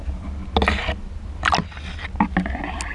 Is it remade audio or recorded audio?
recorded